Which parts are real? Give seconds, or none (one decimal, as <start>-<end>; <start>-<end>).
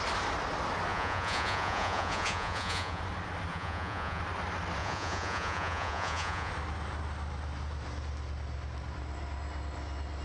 0.0-0.9; 3.0-3.5; 4.2-4.8; 6.5-10.2